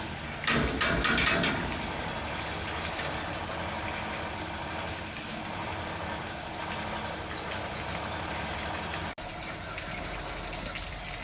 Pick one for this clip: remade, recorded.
recorded